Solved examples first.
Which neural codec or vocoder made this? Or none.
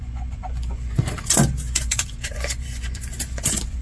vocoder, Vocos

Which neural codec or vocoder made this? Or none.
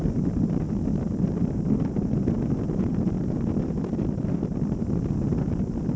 none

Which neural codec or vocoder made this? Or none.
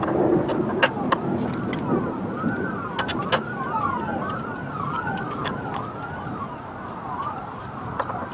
none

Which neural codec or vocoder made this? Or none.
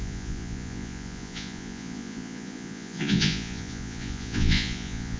vocoder, Vocos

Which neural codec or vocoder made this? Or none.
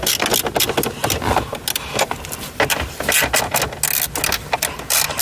none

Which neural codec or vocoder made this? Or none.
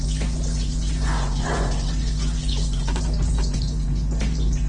vocoder, Vocos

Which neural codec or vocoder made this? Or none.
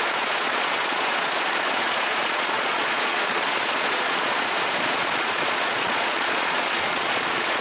vocoder, Vocos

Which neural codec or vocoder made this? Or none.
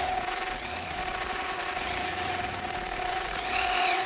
vocoder, Vocos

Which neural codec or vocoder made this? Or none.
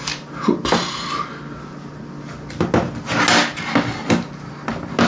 none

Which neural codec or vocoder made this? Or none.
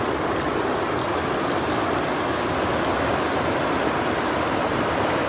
none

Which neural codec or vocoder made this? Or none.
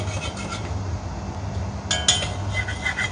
none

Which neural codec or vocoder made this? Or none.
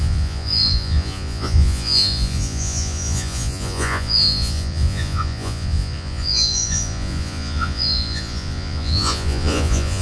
vocoder, Vocos